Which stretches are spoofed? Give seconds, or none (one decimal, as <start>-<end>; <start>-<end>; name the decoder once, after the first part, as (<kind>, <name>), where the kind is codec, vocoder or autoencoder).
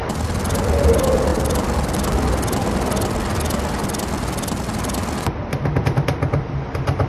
none